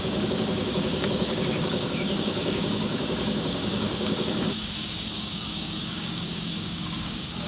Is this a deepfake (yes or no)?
yes